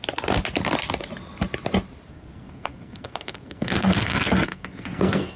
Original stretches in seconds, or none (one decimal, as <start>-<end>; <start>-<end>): 0.0-2.1